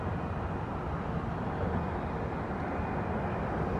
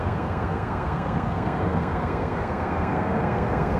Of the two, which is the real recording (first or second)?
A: first